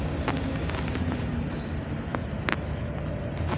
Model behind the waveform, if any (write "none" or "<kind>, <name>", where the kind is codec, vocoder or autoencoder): none